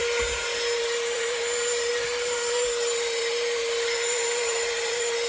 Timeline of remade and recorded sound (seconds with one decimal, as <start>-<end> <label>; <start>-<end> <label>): 0.0-0.8 recorded; 0.8-5.3 remade